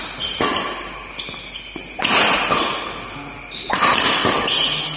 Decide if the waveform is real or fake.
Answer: real